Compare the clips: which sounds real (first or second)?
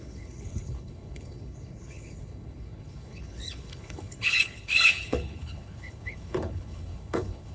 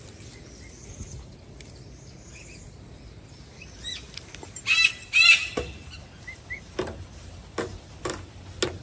second